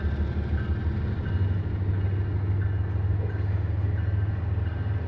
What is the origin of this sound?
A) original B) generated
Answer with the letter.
A